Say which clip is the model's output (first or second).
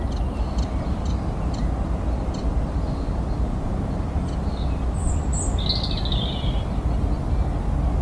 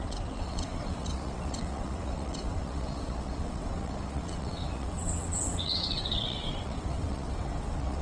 second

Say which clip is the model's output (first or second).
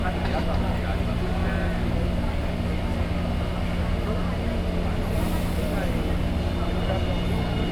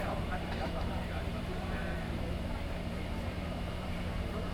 second